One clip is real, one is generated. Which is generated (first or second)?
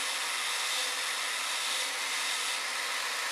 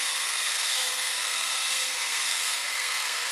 second